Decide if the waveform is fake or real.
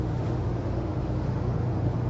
fake